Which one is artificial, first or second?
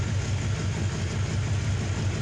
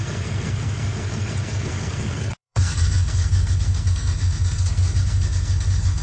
second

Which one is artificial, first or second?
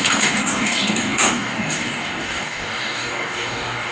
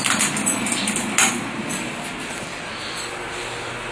first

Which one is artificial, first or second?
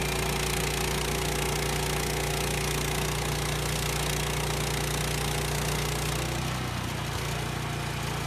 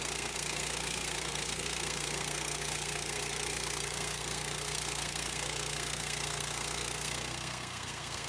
second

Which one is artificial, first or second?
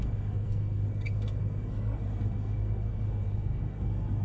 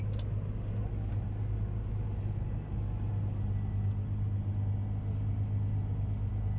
first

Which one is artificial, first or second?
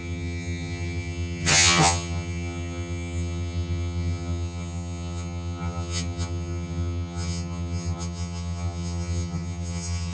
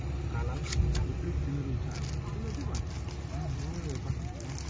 first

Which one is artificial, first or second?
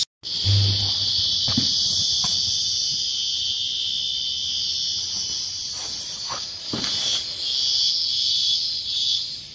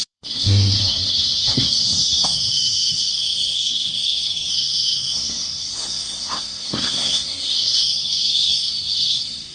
second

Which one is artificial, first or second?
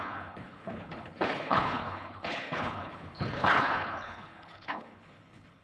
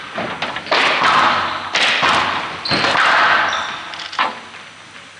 first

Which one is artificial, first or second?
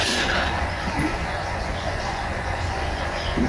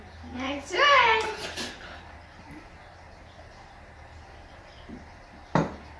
first